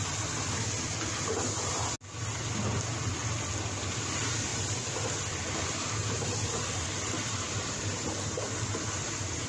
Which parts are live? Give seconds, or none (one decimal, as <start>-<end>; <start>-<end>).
0.0-4.5